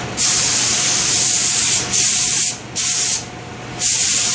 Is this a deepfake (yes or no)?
no